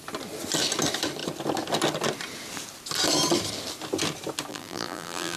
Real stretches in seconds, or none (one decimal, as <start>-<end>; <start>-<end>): 0.0-4.5